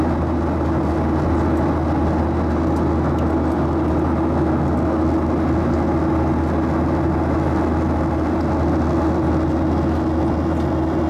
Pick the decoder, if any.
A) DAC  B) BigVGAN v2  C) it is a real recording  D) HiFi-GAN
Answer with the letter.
C